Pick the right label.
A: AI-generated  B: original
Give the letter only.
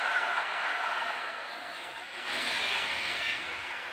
A